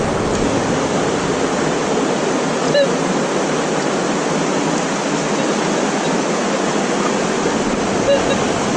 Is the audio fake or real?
real